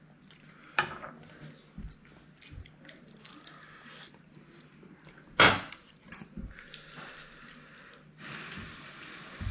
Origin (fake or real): real